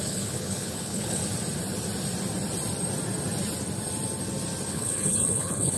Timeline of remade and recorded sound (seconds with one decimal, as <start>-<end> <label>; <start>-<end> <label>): 0.0-1.2 remade; 1.2-4.7 recorded; 4.7-5.8 remade